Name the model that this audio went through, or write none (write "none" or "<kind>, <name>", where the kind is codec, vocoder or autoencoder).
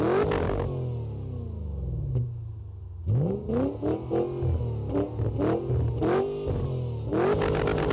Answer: none